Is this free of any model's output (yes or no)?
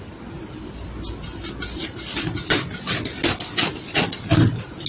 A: yes